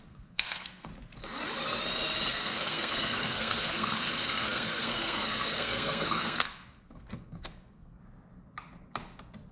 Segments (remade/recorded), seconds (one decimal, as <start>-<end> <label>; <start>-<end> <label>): 0.0-0.9 remade; 0.9-2.3 recorded; 2.3-8.0 remade; 8.0-9.5 recorded